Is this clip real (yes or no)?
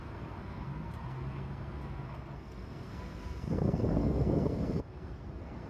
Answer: no